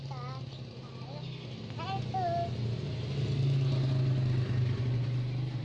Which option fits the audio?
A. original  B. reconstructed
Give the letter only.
A